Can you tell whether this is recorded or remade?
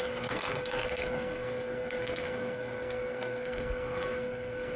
remade